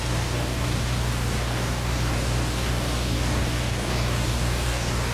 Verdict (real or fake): fake